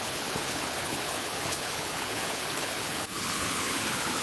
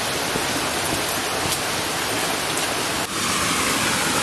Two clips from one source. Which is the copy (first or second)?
first